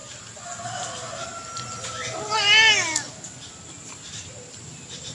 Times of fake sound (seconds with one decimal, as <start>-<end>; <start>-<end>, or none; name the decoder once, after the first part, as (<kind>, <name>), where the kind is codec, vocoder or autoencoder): none